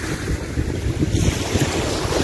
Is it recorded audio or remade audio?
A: recorded